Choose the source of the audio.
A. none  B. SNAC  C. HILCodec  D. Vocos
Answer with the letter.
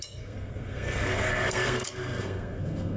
B